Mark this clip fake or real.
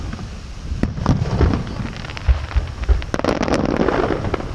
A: real